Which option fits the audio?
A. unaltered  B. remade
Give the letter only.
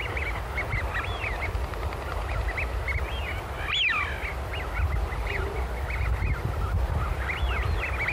A